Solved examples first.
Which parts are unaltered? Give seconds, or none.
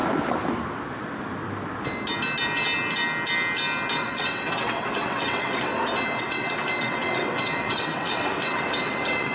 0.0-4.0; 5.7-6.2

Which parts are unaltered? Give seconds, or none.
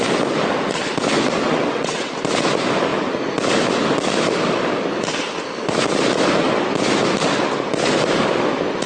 0.0-1.4; 2.1-8.9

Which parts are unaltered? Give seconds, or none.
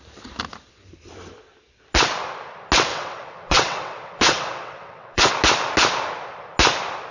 0.0-2.9; 5.3-7.1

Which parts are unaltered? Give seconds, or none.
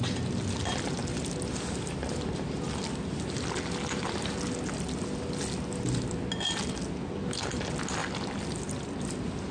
0.0-9.5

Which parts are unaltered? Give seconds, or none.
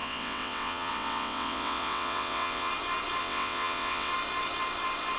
2.7-3.2; 4.1-5.2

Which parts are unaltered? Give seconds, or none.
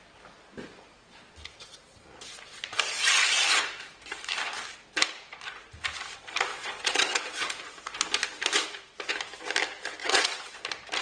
0.0-6.5; 7.5-10.0; 10.5-11.0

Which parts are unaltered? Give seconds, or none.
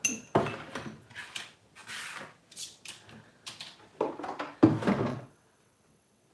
0.0-5.1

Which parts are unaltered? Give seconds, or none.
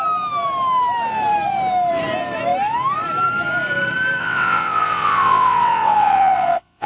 0.0-4.2